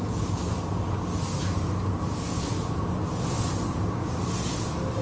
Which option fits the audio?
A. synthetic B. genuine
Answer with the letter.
B